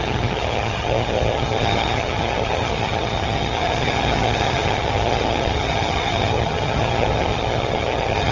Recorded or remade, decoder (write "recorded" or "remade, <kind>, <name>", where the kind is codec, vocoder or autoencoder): remade, vocoder, HiFi-GAN